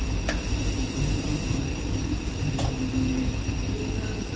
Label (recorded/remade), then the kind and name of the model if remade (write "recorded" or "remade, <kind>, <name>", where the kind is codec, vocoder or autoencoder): recorded